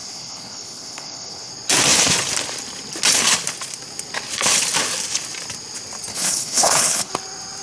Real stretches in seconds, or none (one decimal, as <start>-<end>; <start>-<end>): 1.5-6.1; 7.1-7.6